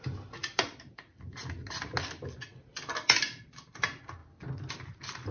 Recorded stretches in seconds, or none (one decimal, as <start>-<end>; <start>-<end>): 0.0-5.3